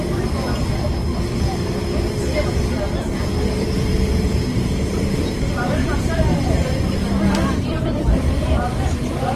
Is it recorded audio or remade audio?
remade